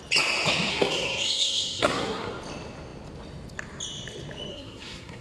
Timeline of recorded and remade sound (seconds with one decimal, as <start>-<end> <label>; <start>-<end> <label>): 0.0-0.7 recorded; 0.7-2.3 remade; 2.3-4.5 recorded; 4.5-5.2 remade